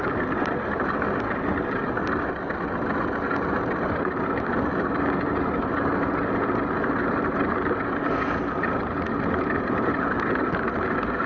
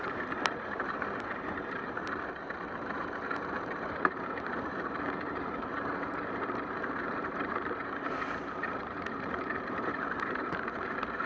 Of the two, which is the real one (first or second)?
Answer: first